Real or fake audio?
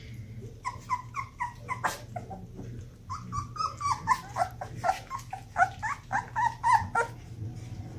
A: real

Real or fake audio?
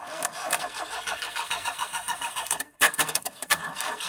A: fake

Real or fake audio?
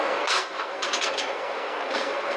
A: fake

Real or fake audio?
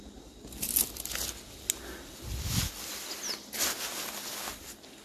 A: real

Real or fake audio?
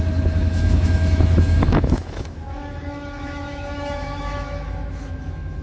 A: fake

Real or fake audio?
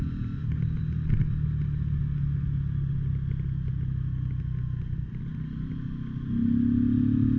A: real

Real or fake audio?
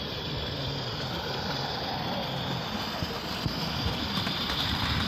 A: real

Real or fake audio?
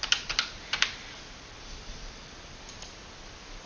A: real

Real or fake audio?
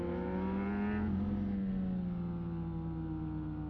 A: real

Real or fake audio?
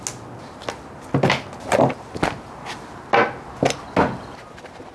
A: real